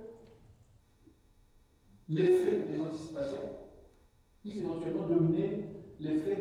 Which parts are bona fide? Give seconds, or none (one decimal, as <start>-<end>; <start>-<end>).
0.0-0.8; 4.6-6.4